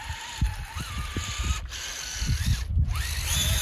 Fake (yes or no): no